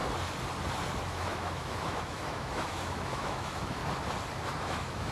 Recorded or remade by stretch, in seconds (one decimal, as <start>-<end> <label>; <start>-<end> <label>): 0.0-1.0 recorded; 1.0-3.8 remade; 3.8-4.6 recorded; 4.6-5.1 remade